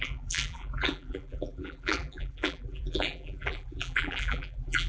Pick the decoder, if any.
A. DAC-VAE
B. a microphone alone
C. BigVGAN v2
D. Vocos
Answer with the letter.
C